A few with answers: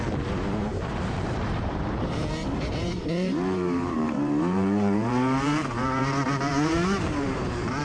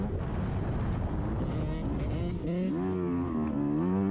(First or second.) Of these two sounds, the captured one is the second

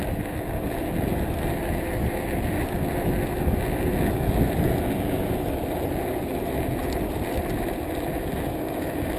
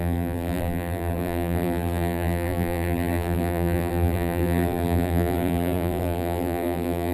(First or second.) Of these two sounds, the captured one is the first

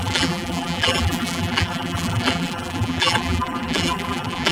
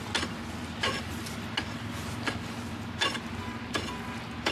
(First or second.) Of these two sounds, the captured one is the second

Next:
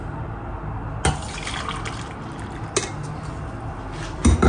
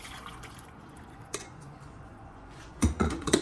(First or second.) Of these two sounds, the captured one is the first